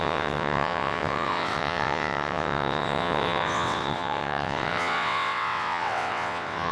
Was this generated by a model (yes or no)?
yes